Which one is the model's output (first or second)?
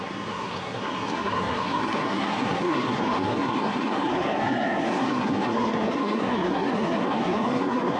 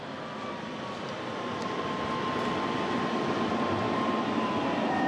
first